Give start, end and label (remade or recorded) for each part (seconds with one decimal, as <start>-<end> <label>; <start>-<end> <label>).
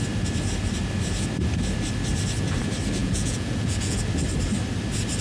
0.0-3.0 recorded; 3.0-4.0 remade; 4.0-5.2 recorded